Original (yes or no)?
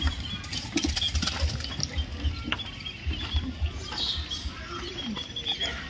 yes